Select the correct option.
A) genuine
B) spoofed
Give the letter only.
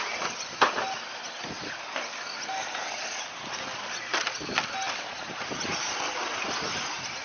A